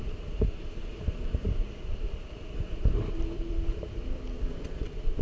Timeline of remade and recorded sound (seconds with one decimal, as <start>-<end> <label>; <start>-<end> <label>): 0.0-0.9 recorded; 0.9-4.0 remade; 4.0-5.2 recorded